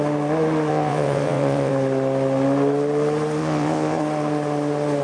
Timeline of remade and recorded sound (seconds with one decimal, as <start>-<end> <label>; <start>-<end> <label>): 0.0-0.7 recorded; 0.7-1.7 remade; 1.7-3.4 recorded; 3.4-4.0 remade; 4.0-5.0 recorded